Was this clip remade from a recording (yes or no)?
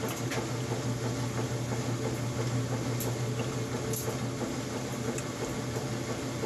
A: no